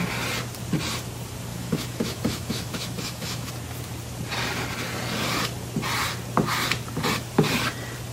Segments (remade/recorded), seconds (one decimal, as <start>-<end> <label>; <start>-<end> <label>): 0.0-1.5 recorded; 1.5-3.5 remade; 3.5-8.1 recorded